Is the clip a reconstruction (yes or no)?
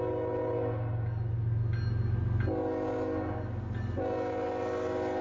no